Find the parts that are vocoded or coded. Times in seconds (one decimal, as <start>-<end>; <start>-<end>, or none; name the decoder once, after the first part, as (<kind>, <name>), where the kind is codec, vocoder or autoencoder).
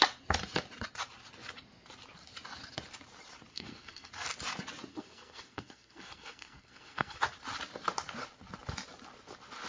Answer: 3.5-4.1 (codec, SNAC); 4.9-7.2